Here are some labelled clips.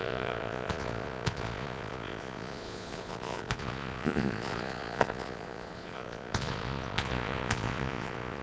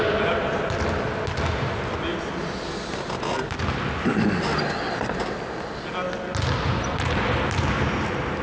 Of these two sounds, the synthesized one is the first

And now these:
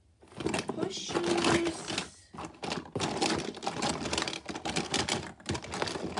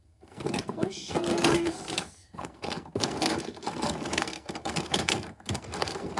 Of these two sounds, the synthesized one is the second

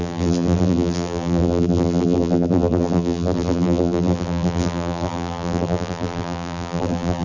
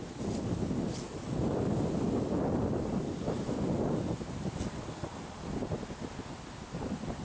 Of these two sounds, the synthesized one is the first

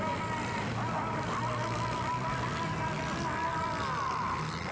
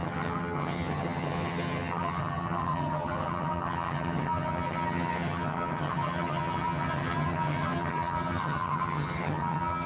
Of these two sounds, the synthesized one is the second